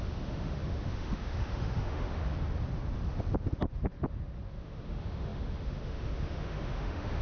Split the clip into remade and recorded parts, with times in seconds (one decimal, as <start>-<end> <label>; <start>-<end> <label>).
0.0-2.2 remade; 2.2-4.6 recorded; 4.6-7.2 remade